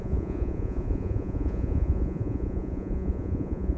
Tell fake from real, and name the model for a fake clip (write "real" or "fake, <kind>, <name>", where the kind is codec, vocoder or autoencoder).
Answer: fake, vocoder, Vocos